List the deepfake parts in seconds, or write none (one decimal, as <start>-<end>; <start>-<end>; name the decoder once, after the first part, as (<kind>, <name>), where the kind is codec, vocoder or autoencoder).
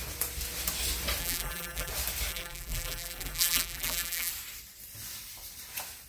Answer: 1.2-1.9 (vocoder, BigVGAN v2); 2.3-4.3